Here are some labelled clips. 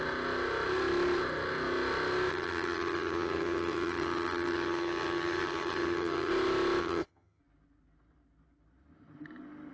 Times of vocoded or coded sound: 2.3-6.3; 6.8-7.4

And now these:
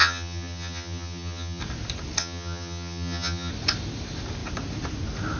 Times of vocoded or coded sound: 0.0-1.6; 2.2-3.5

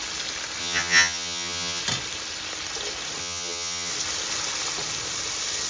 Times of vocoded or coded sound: 0.6-1.8; 3.2-3.9

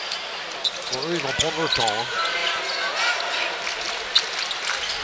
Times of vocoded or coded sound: none